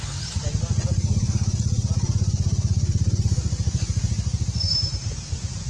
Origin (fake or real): real